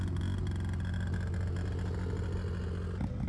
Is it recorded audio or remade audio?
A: recorded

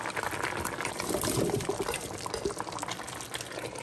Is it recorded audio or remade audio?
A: recorded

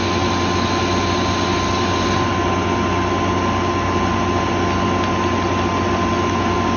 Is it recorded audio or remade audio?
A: recorded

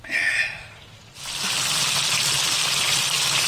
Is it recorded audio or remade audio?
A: recorded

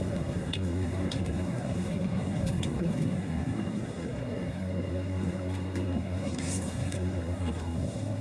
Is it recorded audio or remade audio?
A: remade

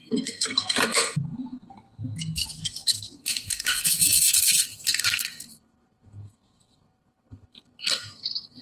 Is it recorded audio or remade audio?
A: remade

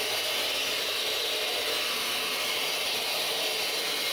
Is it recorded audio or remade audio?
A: recorded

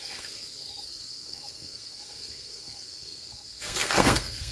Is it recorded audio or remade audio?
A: remade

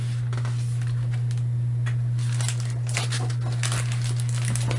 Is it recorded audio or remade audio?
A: recorded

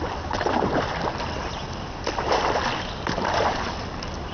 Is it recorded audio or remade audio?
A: recorded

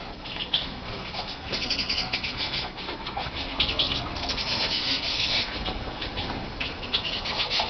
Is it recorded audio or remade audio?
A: remade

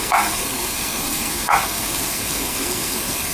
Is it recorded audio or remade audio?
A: remade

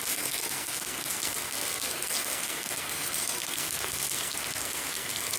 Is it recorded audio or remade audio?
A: remade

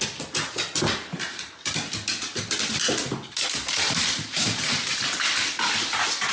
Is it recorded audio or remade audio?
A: recorded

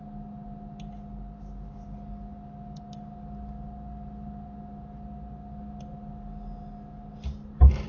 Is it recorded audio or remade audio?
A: recorded